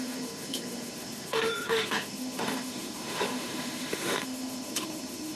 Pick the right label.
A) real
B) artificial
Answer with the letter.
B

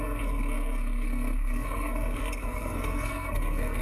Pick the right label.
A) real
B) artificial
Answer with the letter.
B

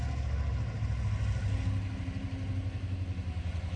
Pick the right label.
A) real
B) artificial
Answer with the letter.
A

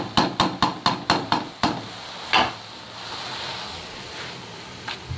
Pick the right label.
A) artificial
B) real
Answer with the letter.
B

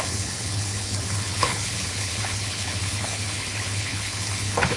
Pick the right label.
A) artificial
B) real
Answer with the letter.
A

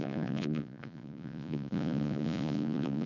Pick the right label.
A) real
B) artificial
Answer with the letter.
B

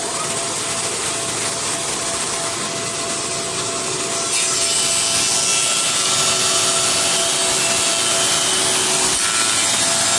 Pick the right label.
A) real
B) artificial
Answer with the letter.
A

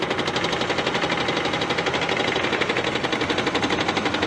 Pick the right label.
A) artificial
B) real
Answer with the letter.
B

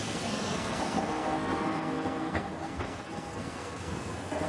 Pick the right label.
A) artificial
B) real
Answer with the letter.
A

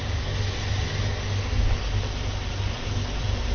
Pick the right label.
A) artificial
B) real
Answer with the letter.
B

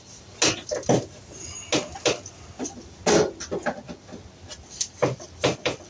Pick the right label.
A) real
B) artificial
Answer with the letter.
A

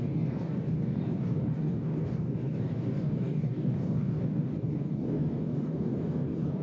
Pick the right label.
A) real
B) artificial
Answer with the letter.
B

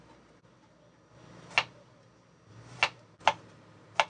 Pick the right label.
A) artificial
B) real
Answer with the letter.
B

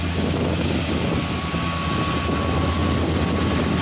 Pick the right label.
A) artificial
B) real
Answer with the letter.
B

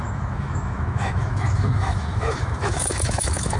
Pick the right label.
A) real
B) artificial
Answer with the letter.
B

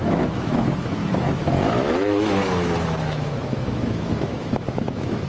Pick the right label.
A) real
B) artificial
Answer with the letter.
B